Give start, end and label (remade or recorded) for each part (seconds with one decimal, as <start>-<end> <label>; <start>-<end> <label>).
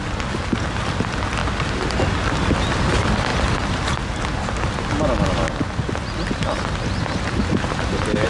0.0-8.3 recorded